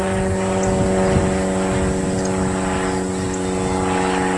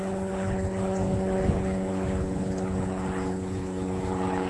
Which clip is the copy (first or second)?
second